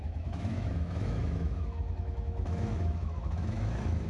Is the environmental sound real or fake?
fake